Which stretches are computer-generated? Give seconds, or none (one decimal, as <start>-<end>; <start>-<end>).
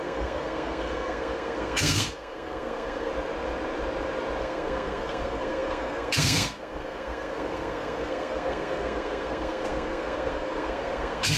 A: 0.0-3.1; 4.4-11.4